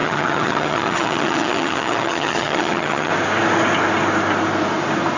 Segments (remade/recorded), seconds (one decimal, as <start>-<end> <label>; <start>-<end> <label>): 0.0-3.1 remade; 3.1-5.2 recorded